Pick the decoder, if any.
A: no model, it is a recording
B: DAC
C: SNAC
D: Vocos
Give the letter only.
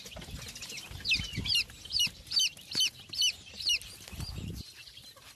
A